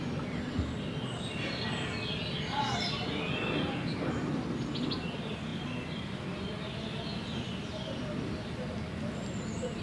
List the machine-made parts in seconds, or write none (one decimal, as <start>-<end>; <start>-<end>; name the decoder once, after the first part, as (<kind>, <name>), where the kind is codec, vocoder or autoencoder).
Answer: none